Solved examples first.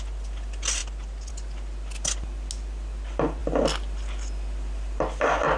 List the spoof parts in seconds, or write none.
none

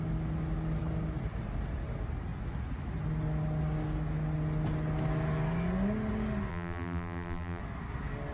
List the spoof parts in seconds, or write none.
6.5-7.6 (vocoder, BigVGAN v2)

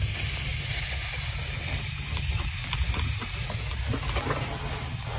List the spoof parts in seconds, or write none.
none

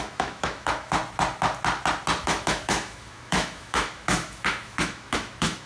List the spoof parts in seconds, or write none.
0.0-1.0 (autoencoder, DAC-VAE); 2.2-5.7

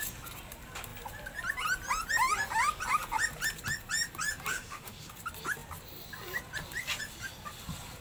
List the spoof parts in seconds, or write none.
4.5-5.1 (autoencoder, DAC-VAE)

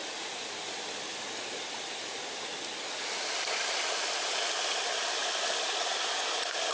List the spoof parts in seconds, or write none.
0.0-4.0 (vocoder, BigVGAN v2)